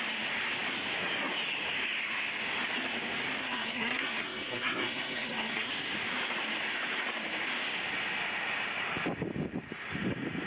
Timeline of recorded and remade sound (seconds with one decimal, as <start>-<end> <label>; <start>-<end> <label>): 0.0-3.4 recorded; 3.4-5.7 remade; 5.7-10.5 recorded